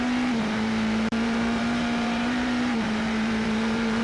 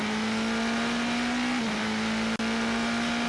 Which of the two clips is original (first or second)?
second